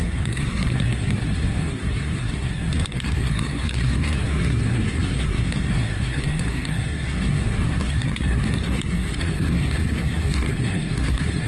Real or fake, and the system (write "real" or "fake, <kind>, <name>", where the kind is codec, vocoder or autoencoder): fake, codec, SNAC